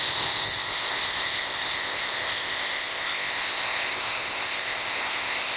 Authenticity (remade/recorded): remade